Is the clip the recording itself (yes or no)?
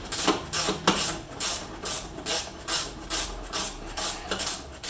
yes